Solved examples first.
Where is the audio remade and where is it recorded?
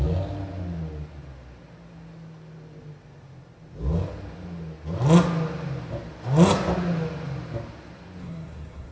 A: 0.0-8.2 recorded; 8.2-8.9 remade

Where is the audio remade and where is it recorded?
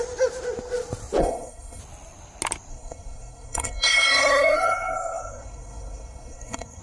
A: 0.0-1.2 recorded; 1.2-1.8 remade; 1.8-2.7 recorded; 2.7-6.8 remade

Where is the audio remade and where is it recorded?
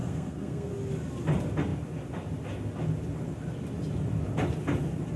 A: 0.0-0.7 remade; 0.7-5.2 recorded